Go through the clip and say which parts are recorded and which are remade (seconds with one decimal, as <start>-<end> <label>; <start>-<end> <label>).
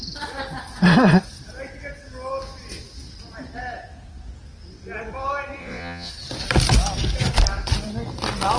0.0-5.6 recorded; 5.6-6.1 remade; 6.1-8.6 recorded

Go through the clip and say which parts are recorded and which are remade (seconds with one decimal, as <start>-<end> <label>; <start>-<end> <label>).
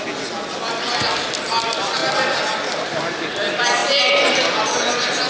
0.0-5.3 recorded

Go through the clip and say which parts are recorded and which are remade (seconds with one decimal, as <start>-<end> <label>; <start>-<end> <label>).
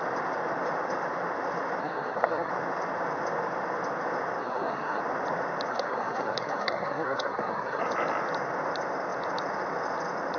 0.0-1.8 recorded; 1.8-2.5 remade; 2.5-4.4 recorded; 4.4-5.0 remade; 5.0-5.7 recorded; 5.7-7.8 remade; 7.8-10.4 recorded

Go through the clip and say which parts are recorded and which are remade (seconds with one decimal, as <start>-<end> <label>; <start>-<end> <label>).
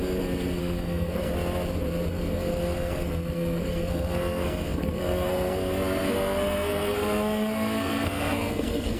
0.0-0.6 recorded; 0.6-1.3 remade; 1.3-2.1 recorded; 2.1-9.0 remade